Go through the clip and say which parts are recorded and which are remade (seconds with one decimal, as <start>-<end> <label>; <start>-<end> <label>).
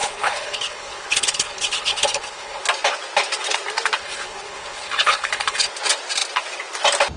0.0-2.6 remade; 2.6-4.0 recorded; 4.0-5.7 remade; 5.7-7.2 recorded